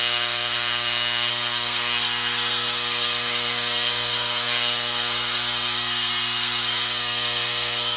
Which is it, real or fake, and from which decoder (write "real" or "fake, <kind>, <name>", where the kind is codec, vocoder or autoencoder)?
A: fake, codec, SNAC